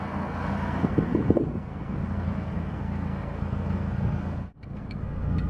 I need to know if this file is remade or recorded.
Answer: remade